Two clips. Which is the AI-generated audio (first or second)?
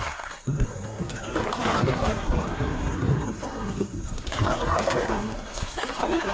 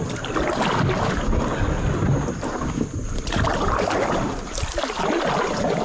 first